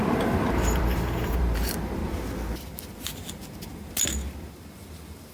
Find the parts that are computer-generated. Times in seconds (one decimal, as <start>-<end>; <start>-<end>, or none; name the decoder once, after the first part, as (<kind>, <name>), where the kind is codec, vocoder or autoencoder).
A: 0.0-2.0 (vocoder, BigVGAN v2)